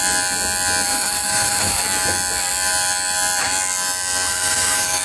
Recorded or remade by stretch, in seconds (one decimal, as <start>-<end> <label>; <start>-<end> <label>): 0.0-0.9 recorded; 0.9-1.8 remade; 1.8-4.3 recorded; 4.3-5.0 remade